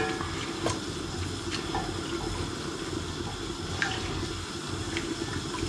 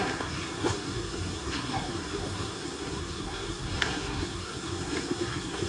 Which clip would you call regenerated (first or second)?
second